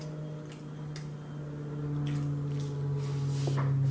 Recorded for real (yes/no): yes